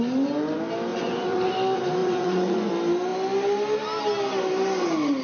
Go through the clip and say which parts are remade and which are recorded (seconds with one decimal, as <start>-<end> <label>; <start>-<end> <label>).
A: 0.0-0.9 recorded; 0.9-1.5 remade; 1.5-2.0 recorded; 2.0-2.7 remade; 2.7-5.2 recorded